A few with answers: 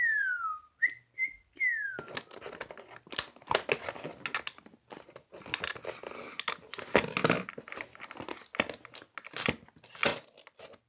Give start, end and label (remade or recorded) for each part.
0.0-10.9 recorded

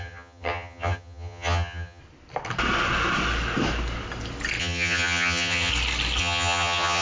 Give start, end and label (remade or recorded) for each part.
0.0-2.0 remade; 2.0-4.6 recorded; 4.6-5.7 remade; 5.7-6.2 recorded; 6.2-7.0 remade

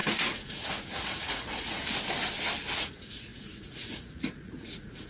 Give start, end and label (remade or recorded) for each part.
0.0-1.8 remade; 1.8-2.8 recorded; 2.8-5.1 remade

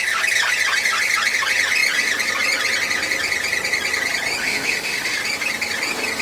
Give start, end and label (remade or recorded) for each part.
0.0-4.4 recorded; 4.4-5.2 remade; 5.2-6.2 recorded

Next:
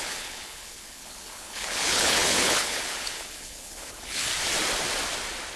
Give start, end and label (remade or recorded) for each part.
0.0-4.3 remade; 4.3-5.6 recorded